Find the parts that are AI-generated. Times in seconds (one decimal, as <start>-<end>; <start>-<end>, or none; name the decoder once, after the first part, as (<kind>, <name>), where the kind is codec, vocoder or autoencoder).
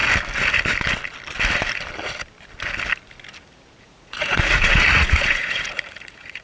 3.8-6.4 (vocoder, Vocos)